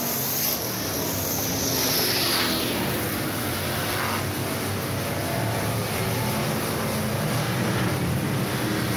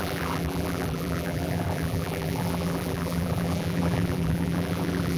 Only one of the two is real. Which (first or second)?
first